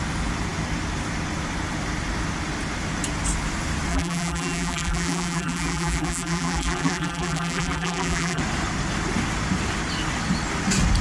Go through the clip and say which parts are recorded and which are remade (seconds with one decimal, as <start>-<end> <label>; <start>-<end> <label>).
0.0-3.9 recorded; 3.9-8.4 remade; 8.4-11.0 recorded